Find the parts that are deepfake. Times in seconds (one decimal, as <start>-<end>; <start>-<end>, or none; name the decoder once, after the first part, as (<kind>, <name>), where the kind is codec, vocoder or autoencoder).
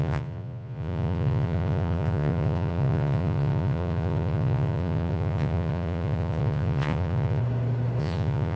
0.0-7.4 (vocoder, Vocos); 8.0-8.6